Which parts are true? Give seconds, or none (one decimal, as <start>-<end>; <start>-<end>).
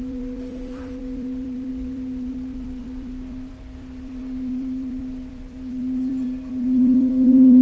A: none